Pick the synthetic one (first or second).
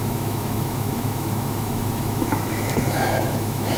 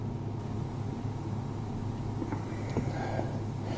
first